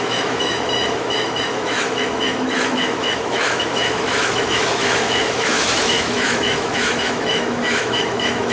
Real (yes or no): no